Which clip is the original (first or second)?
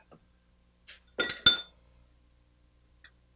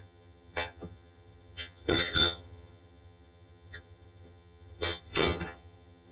first